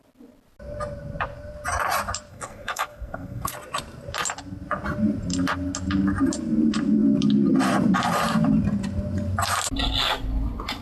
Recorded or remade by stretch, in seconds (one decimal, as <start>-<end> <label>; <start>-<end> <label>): 0.0-2.3 recorded; 2.3-3.5 remade; 3.5-10.8 recorded

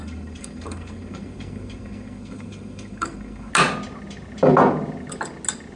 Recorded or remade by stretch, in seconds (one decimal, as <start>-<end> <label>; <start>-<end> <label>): 0.0-3.5 remade; 3.5-5.8 recorded

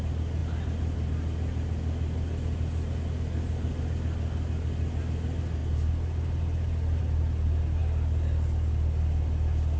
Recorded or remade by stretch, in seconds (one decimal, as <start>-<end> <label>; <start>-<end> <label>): 0.0-9.8 recorded